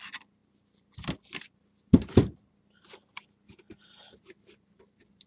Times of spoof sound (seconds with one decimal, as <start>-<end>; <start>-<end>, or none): none